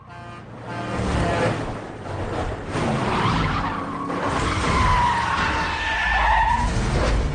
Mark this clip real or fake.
real